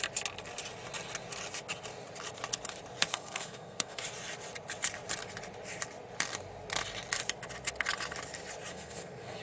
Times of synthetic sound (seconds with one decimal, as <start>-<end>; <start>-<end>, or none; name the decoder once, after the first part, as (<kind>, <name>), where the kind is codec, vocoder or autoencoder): 3.1-4.0 (codec, SNAC); 8.7-9.4